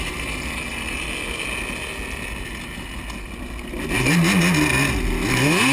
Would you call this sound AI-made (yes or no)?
no